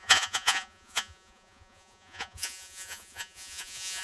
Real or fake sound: fake